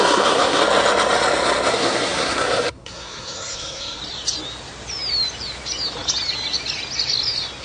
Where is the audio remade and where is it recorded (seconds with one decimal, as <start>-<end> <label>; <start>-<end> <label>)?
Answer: 0.0-0.6 remade; 0.6-1.7 recorded; 1.7-4.0 remade; 4.0-7.6 recorded